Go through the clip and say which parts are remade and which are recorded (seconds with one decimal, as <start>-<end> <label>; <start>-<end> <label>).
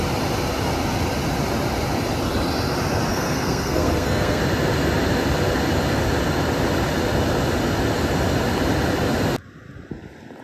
0.0-3.1 recorded; 3.1-4.4 remade; 4.4-10.4 recorded